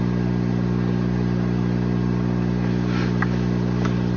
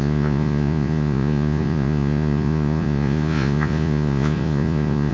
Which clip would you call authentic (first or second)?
first